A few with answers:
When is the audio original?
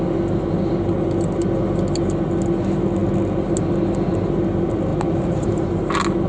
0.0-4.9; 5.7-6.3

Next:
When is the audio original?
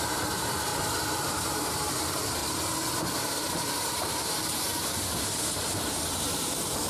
0.7-1.2; 2.4-3.8